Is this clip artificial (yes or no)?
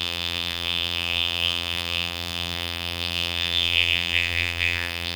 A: yes